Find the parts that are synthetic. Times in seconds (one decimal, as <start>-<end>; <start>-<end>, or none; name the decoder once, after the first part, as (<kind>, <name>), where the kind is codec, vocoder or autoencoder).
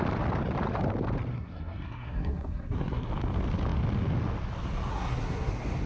1.3-3.1 (codec, SNAC); 4.9-5.5